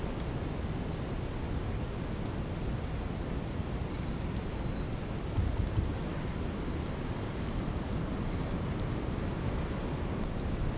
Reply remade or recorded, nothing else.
recorded